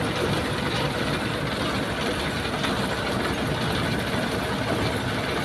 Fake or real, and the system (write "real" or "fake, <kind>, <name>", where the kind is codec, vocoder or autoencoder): real